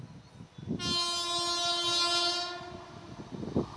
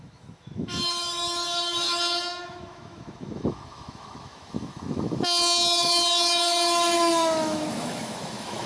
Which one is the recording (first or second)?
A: first